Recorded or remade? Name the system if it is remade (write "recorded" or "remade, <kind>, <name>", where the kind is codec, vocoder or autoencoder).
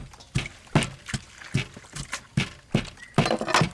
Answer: recorded